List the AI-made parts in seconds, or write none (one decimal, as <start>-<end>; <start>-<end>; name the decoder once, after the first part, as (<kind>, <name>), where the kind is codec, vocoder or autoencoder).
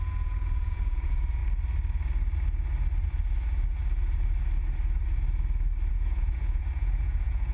0.0-1.4 (vocoder, Vocos); 5.9-7.5